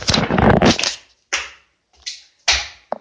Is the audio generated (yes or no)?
no